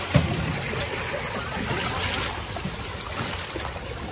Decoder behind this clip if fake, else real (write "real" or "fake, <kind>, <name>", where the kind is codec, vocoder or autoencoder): real